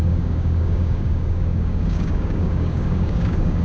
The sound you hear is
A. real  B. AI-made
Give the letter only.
B